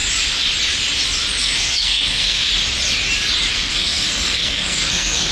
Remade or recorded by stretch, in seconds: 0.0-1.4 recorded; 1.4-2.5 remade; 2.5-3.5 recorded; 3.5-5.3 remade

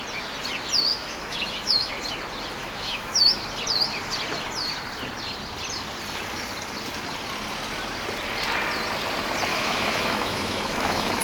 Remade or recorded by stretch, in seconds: 0.0-0.9 recorded; 0.9-1.9 remade; 1.9-2.6 recorded; 2.6-3.4 remade; 3.4-9.5 recorded; 9.5-11.2 remade

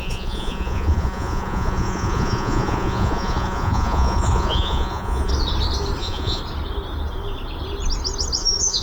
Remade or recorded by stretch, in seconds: 0.0-5.3 remade; 5.3-6.0 recorded; 6.0-6.4 remade; 6.4-8.4 recorded; 8.4-8.8 remade

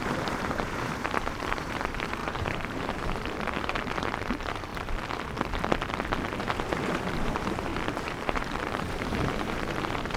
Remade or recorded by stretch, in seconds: 0.0-4.7 remade; 4.7-6.8 recorded; 6.8-7.7 remade; 7.7-8.2 recorded; 8.2-10.2 remade

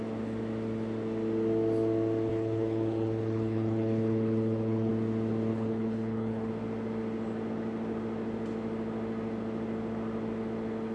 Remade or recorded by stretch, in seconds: 0.0-2.3 recorded; 2.3-4.9 remade; 4.9-5.5 recorded; 5.5-6.5 remade; 6.5-10.9 recorded

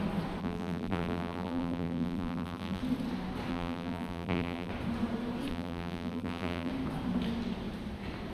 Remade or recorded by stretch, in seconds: 0.0-0.4 recorded; 0.4-2.8 remade; 2.8-3.5 recorded; 3.5-4.7 remade; 4.7-5.5 recorded; 5.5-6.7 remade; 6.7-8.3 recorded